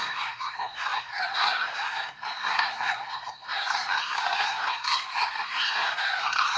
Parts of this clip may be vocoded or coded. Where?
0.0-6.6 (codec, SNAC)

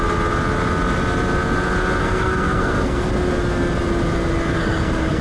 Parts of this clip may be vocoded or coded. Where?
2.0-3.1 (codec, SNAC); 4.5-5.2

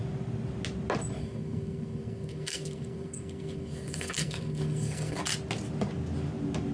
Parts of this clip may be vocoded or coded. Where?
1.2-5.2 (codec, SNAC)

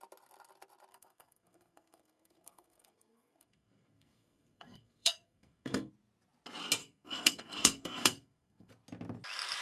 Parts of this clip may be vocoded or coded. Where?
0.9-5.9 (codec, SNAC); 6.8-8.7

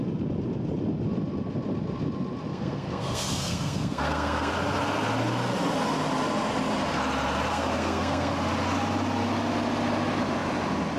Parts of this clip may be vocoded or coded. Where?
2.5-4.5 (codec, SNAC); 7.5-8.3

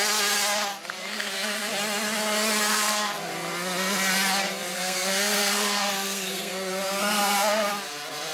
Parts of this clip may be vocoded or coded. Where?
1.1-1.7 (codec, SNAC); 2.7-3.3; 4.7-7.7